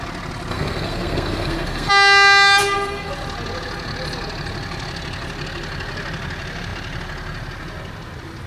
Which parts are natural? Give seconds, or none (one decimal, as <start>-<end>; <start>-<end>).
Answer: 0.0-0.5; 1.9-2.6; 3.1-8.5